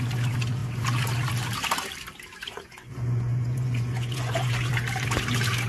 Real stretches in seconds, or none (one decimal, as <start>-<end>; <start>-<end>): 0.0-2.4; 4.7-5.7